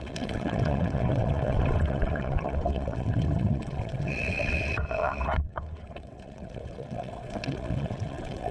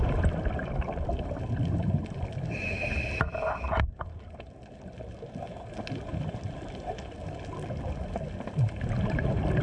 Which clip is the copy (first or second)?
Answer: first